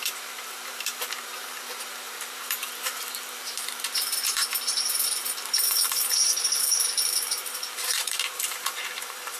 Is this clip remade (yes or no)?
yes